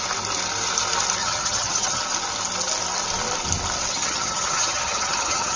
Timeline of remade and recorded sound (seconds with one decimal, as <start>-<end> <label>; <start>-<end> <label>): 0.0-1.2 recorded; 1.2-2.0 remade; 2.0-3.9 recorded; 3.9-5.6 remade